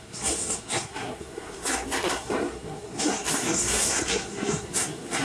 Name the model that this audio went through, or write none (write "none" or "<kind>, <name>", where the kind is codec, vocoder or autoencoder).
codec, SNAC